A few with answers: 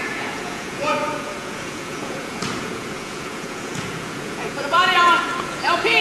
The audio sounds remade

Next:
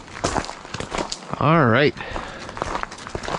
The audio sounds recorded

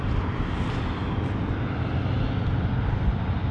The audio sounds recorded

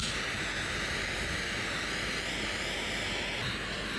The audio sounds recorded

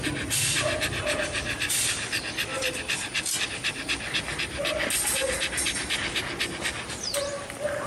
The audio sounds recorded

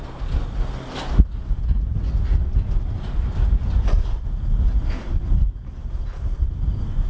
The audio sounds recorded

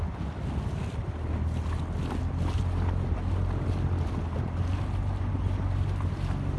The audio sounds recorded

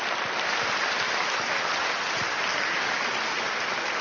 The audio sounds recorded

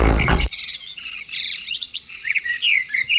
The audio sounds remade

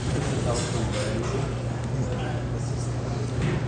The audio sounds recorded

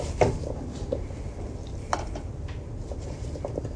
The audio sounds recorded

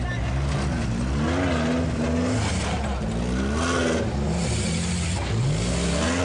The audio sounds recorded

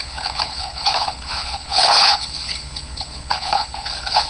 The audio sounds remade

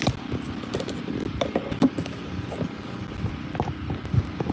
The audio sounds recorded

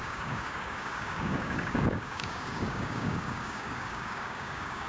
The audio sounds remade